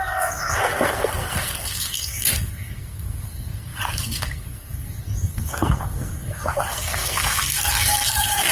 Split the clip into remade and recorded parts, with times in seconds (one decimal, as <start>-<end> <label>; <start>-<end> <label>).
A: 0.0-8.5 remade